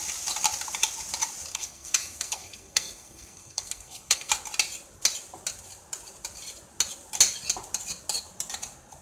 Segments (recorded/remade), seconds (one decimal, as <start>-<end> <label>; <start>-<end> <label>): 0.0-1.5 recorded; 1.5-4.3 remade; 4.3-9.0 recorded